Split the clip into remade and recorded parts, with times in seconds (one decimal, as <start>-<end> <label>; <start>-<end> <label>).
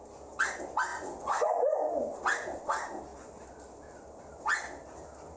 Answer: 0.0-0.9 recorded; 0.9-1.5 remade; 1.5-5.4 recorded